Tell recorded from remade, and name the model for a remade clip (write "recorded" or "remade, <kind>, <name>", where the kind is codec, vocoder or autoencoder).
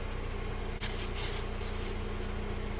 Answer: recorded